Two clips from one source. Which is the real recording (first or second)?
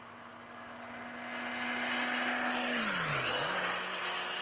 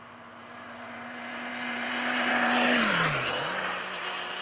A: first